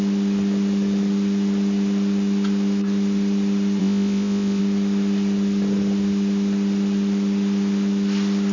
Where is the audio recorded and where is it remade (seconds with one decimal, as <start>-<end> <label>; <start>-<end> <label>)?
0.0-3.8 recorded; 3.8-4.6 remade; 4.6-8.5 recorded